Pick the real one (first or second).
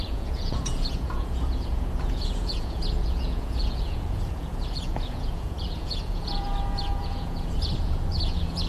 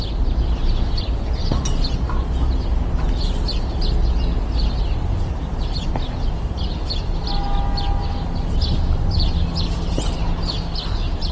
second